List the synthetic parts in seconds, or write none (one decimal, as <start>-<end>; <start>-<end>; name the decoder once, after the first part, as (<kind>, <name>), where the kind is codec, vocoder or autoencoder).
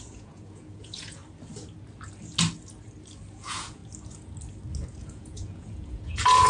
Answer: 0.0-1.2 (vocoder, Vocos); 3.3-3.8; 5.0-6.5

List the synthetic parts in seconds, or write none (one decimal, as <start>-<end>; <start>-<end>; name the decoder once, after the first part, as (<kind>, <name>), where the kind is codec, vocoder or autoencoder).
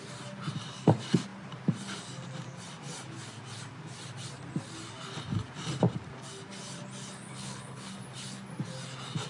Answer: 7.3-7.9 (codec, HILCodec)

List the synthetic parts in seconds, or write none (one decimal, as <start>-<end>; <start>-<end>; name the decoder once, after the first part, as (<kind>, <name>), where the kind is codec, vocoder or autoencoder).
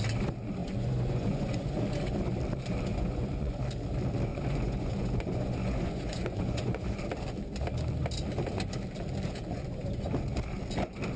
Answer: 0.6-1.7 (vocoder, Vocos); 2.9-3.6; 4.3-7.0; 9.5-10.1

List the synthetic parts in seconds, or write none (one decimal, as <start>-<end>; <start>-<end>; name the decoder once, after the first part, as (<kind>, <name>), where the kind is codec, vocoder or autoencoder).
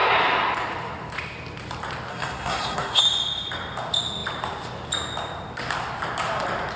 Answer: 2.1-3.0 (codec, SNAC)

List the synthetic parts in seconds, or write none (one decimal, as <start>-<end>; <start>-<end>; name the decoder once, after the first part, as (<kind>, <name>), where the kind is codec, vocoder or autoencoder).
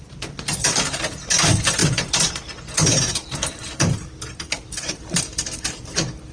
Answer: none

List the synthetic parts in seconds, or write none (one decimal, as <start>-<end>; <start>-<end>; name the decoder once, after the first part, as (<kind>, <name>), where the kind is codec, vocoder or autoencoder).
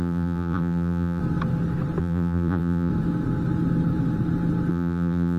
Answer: 0.0-1.2 (vocoder, BigVGAN v2); 2.0-2.9; 4.7-5.4